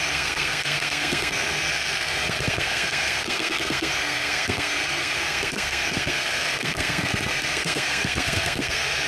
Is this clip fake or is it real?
fake